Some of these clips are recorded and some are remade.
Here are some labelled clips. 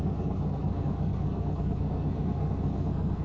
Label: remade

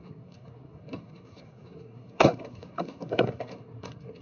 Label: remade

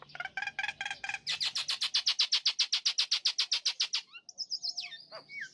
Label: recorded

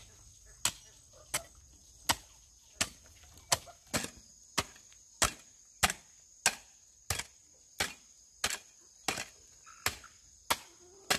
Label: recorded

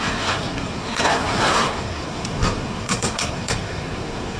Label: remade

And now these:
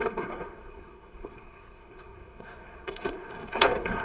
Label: remade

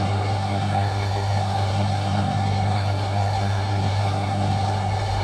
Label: remade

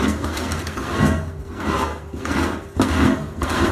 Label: remade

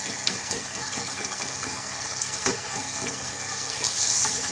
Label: remade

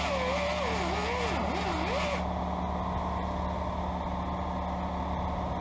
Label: recorded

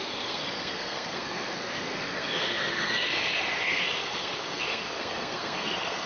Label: remade